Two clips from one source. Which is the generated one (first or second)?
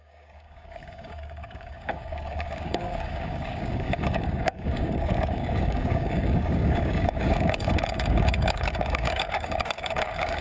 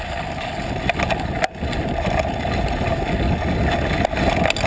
first